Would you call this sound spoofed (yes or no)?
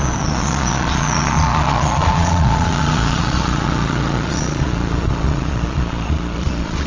yes